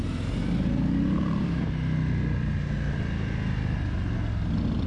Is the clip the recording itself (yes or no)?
yes